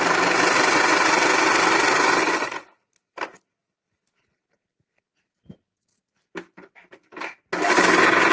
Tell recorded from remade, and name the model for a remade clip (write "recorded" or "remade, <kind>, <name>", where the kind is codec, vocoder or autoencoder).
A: recorded